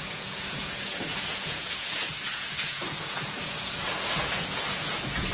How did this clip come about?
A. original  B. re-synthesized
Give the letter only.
B